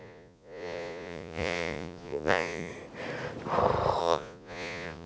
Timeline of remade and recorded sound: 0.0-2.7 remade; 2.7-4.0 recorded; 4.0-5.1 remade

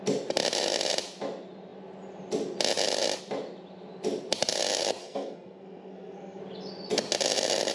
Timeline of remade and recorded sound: 0.0-5.0 recorded; 5.0-6.4 remade; 6.4-7.7 recorded